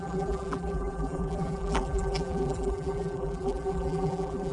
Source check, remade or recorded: remade